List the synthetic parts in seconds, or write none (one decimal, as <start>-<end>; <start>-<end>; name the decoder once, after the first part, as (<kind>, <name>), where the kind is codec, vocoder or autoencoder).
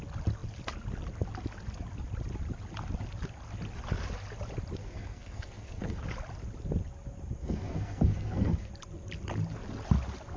4.8-6.0 (codec, SNAC); 7.4-8.7